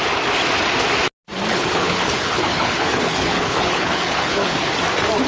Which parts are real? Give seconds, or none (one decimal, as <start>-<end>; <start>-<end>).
0.0-1.5; 4.7-5.3

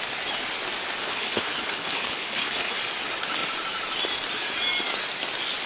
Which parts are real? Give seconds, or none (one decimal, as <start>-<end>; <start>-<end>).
0.0-1.0; 2.8-5.7

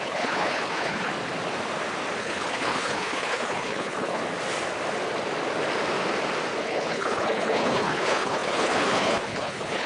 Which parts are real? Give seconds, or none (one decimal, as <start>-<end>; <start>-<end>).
1.1-2.2; 4.2-6.6

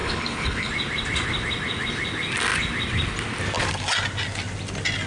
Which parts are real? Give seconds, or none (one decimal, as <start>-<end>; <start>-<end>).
0.7-5.1

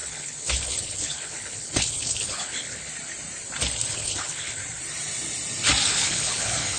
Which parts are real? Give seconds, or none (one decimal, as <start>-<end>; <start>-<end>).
2.9-3.9; 4.6-5.9

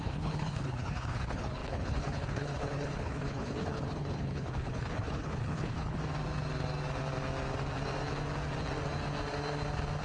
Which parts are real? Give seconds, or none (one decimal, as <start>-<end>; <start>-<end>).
6.0-10.0